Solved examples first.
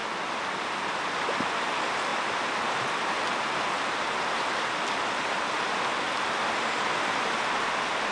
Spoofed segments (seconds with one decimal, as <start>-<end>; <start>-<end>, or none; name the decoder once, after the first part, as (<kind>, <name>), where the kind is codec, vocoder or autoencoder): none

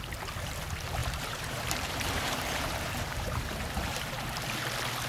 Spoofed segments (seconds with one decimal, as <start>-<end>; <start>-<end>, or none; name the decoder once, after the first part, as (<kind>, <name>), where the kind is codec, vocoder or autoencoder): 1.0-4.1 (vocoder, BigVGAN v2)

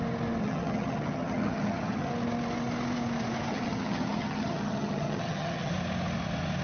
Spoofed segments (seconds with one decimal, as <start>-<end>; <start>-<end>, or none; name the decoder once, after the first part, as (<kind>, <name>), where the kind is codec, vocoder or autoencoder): 0.4-2.1 (vocoder, HiFi-GAN); 3.5-5.7